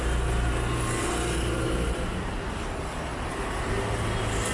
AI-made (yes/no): no